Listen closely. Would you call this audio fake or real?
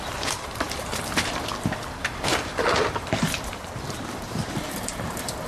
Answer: fake